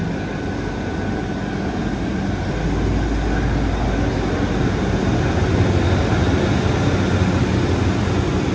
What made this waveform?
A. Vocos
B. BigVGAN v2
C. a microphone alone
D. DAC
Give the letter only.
C